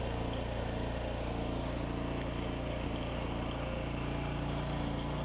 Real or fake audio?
real